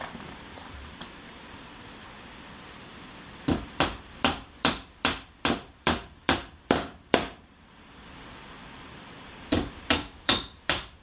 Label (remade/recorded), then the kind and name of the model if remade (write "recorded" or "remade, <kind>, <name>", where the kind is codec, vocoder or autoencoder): remade, vocoder, BigVGAN v2